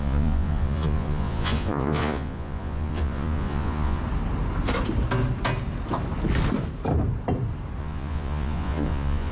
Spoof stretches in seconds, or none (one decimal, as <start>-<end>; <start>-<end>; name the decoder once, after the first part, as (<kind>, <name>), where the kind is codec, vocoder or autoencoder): 0.0-4.0 (vocoder, Vocos); 7.8-9.3